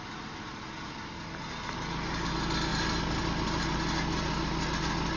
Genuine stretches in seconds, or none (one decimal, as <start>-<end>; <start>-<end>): 0.0-5.2